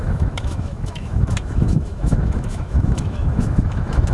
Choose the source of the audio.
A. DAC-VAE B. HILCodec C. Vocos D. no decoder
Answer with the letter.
A